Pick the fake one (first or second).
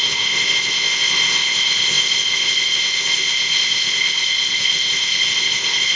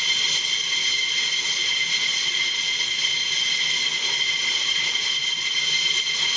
first